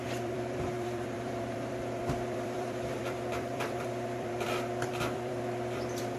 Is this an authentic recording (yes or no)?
no